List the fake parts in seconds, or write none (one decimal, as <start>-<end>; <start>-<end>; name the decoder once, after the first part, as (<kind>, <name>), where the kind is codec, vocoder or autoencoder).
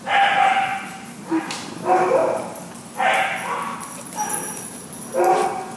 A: none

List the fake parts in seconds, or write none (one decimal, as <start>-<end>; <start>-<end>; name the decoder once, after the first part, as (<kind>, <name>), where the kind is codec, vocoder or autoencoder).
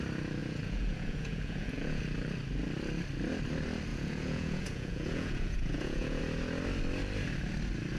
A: 0.4-2.0 (vocoder, Vocos); 3.9-6.2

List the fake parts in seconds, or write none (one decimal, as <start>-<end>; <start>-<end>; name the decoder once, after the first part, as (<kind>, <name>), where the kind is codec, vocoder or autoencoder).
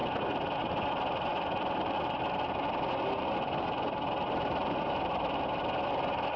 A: none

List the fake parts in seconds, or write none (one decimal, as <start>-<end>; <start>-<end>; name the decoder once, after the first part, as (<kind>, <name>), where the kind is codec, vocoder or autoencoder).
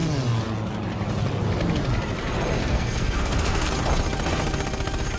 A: 2.6-3.7 (codec, SNAC)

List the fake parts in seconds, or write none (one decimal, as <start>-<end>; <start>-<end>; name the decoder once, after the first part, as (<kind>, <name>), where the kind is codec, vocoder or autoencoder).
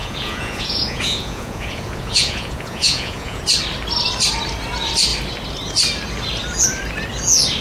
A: 0.0-3.4 (vocoder, Vocos)